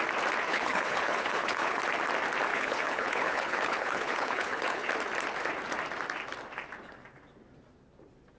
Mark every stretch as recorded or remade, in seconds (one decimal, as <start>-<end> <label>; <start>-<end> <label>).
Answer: 0.0-0.5 recorded; 0.5-1.8 remade; 1.8-2.5 recorded; 2.5-4.9 remade; 4.9-8.4 recorded